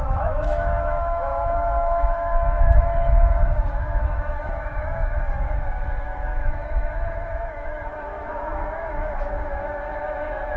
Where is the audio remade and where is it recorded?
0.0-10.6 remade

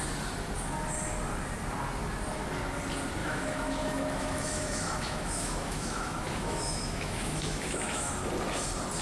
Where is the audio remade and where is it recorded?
0.0-3.2 recorded; 3.2-8.1 remade; 8.1-9.0 recorded

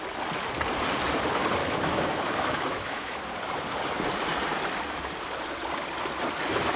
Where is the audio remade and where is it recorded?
0.0-1.6 recorded; 1.6-3.2 remade; 3.2-6.8 recorded

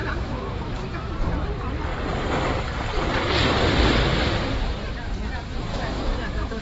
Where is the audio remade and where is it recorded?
0.0-1.1 remade; 1.1-5.7 recorded; 5.7-6.6 remade

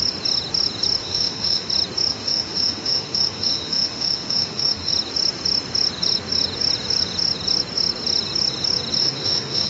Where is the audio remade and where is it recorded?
0.0-1.0 recorded; 1.0-1.7 remade; 1.7-2.1 recorded; 2.1-4.9 remade; 4.9-9.0 recorded; 9.0-9.7 remade

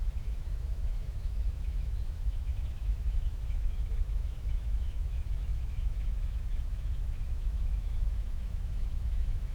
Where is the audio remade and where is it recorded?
0.0-9.5 remade

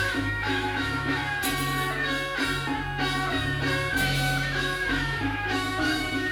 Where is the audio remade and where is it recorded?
0.0-1.2 remade; 1.2-3.9 recorded; 3.9-6.3 remade

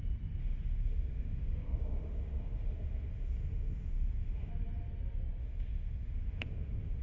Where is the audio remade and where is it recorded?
0.0-0.4 recorded; 0.4-4.5 remade; 4.5-5.4 recorded; 5.4-7.0 remade